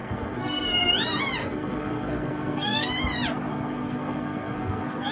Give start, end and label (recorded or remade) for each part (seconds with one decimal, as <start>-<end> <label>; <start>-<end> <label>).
0.0-0.9 remade; 0.9-1.4 recorded; 1.4-2.9 remade; 2.9-3.5 recorded; 3.5-5.1 remade